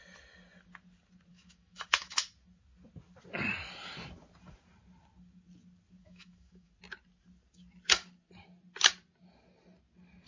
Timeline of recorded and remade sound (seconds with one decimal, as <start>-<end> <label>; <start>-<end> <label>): 0.0-1.3 recorded; 1.3-2.2 remade; 2.2-6.0 recorded; 6.0-6.7 remade; 6.7-10.3 recorded